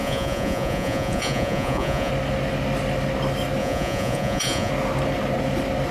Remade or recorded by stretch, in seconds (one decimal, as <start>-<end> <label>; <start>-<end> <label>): 0.0-2.1 remade; 2.1-3.6 recorded; 3.6-4.7 remade; 4.7-5.9 recorded